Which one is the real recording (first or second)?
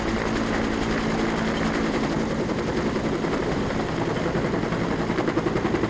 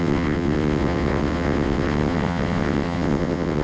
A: first